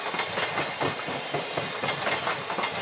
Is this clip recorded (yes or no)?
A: yes